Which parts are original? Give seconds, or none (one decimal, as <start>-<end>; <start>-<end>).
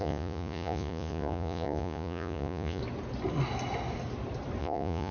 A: 2.8-4.6